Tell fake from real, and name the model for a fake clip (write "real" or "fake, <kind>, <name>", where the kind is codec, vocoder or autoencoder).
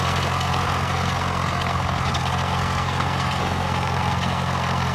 fake, codec, SNAC